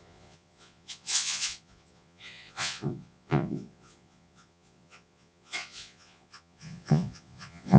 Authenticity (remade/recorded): remade